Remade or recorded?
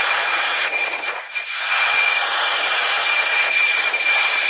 remade